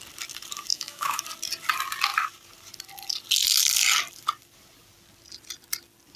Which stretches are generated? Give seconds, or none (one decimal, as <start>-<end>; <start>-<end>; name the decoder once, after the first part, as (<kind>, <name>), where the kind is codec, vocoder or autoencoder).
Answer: 0.7-1.2 (autoencoder, DAC-VAE)